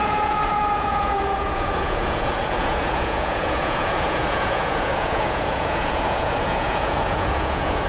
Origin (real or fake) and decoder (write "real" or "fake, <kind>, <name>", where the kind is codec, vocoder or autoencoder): fake, vocoder, Vocos